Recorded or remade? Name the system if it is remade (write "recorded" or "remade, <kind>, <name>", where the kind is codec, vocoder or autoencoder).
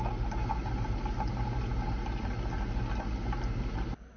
recorded